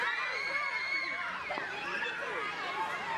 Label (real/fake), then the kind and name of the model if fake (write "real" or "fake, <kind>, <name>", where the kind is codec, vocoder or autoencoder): real